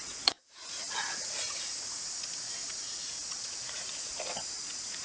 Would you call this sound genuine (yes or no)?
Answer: no